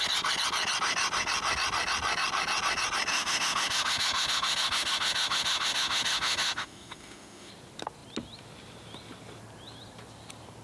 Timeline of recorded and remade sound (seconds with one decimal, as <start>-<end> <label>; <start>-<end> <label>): 0.0-3.1 recorded; 3.1-7.5 remade; 7.5-10.6 recorded